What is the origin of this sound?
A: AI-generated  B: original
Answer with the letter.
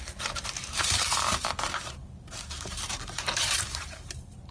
A